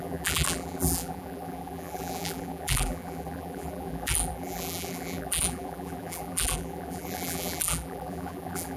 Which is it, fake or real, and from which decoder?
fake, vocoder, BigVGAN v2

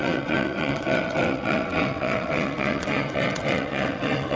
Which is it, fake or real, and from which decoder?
fake, vocoder, WaveNeXt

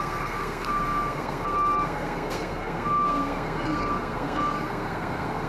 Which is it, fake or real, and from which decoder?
fake, codec, SNAC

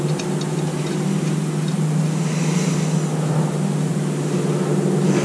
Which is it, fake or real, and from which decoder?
real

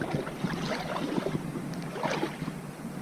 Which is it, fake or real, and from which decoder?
real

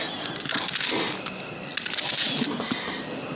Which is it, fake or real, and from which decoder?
real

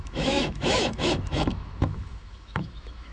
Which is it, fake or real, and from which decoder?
fake, autoencoder, DAC-VAE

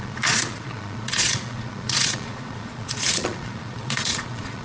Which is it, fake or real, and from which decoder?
fake, vocoder, Vocos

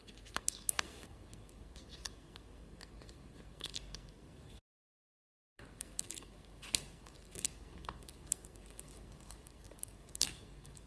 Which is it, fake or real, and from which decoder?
fake, codec, SNAC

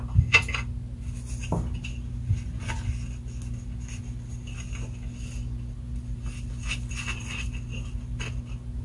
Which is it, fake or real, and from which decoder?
real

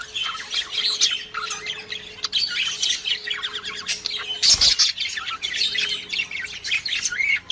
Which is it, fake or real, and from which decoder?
real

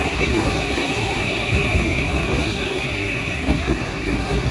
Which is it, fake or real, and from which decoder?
fake, codec, SNAC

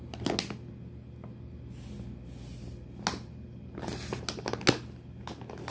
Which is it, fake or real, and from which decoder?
real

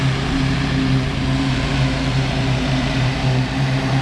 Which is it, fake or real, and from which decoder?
fake, vocoder, BigVGAN v2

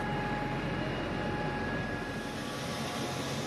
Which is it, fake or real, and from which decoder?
real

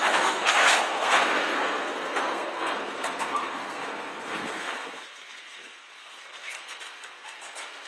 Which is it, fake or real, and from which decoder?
fake, codec, SNAC